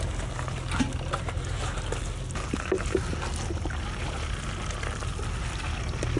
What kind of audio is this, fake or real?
real